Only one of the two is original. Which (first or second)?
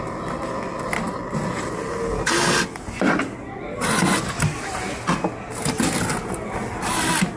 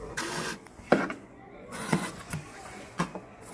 first